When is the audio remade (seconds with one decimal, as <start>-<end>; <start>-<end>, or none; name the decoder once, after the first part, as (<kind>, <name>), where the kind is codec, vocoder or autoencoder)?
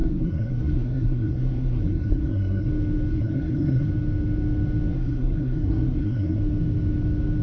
0.0-2.7 (codec, SNAC); 3.1-3.9; 4.9-6.4